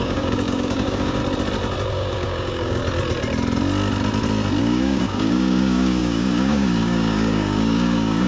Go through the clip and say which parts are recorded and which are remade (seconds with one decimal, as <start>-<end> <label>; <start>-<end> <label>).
0.0-1.2 remade; 1.2-1.9 recorded; 1.9-2.8 remade; 2.8-4.6 recorded; 4.6-8.3 remade